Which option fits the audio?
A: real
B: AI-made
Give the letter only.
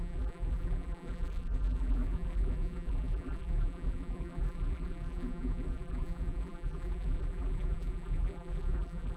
B